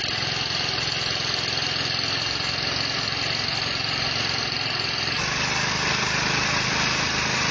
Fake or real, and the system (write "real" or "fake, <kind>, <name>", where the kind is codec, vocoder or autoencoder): real